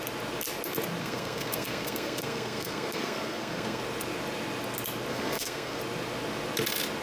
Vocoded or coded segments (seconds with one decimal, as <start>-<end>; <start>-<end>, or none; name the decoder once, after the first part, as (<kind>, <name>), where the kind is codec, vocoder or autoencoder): 1.0-3.8 (codec, SNAC); 5.1-5.8